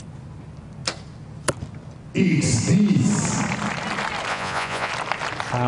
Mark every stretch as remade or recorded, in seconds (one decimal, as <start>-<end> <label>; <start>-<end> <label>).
0.0-4.3 recorded; 4.3-4.9 remade; 4.9-5.7 recorded